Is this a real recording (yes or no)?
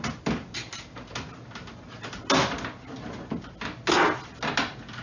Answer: yes